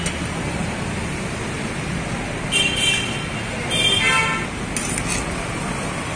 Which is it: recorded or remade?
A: recorded